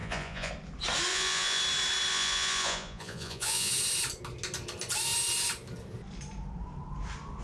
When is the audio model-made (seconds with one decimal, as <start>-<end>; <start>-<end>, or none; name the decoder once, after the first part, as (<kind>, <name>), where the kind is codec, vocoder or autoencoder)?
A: 0.0-0.5 (vocoder, Vocos); 1.1-1.6; 2.1-3.7